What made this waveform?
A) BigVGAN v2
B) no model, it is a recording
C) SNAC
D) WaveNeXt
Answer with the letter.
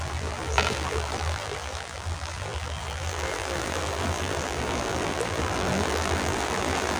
A